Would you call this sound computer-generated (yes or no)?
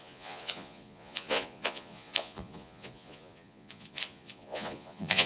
yes